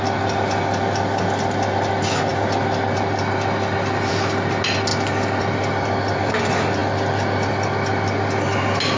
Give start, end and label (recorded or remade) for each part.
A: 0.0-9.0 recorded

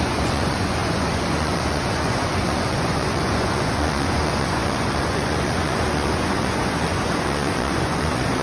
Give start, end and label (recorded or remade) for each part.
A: 0.0-8.4 remade